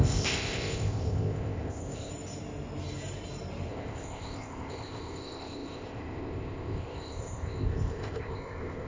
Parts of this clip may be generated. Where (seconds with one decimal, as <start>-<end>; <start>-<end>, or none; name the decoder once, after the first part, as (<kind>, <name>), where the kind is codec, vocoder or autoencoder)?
0.0-2.1 (codec, ZipCodec); 3.7-8.9